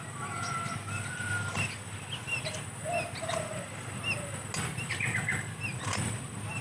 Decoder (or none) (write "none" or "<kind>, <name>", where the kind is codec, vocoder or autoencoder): none